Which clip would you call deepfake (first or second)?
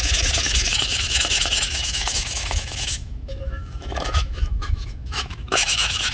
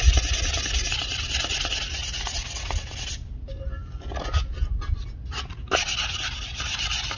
first